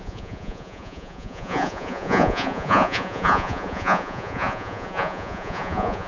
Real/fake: fake